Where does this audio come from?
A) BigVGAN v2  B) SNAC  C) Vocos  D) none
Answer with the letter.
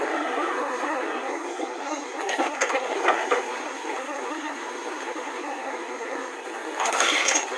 B